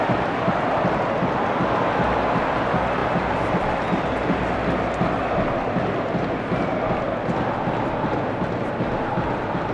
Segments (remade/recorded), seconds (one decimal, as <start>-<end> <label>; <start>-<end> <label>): 0.0-9.7 recorded